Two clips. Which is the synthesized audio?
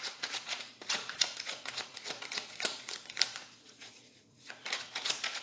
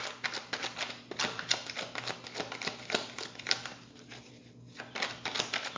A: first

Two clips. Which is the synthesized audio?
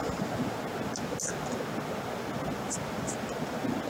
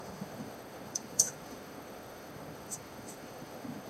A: second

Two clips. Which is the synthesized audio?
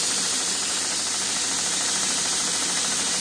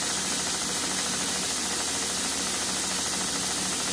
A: first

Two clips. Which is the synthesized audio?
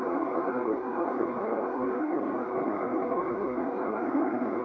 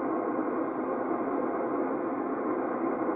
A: first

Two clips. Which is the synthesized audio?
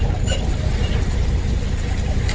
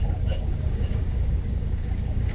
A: second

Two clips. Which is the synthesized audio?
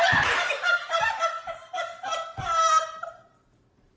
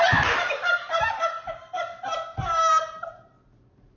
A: first